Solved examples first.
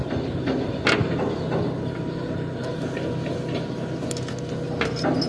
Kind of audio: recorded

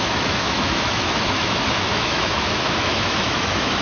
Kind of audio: remade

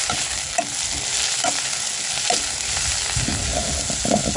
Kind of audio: recorded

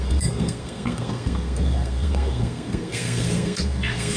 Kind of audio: remade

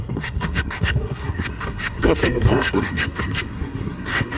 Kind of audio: remade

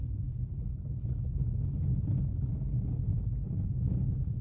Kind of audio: recorded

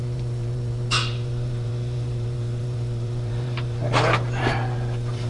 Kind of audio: remade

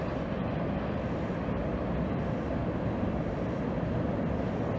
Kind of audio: recorded